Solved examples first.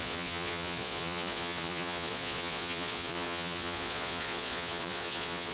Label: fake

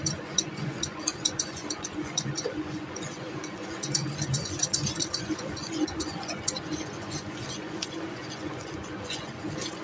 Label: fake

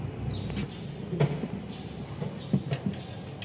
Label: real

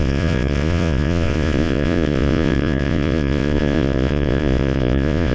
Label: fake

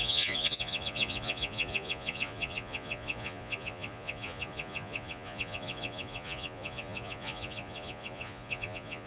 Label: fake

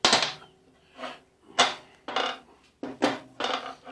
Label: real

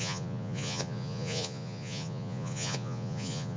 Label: fake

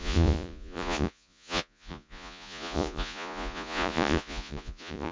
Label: fake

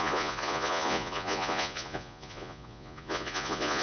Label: fake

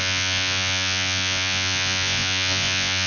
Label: fake